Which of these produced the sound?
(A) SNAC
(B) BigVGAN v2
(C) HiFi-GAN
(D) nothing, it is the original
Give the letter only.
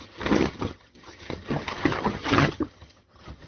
C